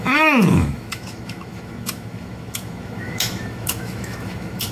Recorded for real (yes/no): no